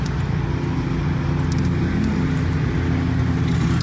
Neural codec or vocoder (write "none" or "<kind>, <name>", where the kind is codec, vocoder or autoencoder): none